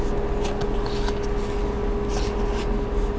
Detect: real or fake real